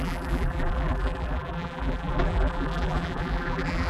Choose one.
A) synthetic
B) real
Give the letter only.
A